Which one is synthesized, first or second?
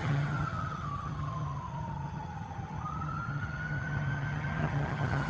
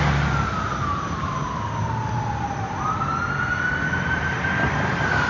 first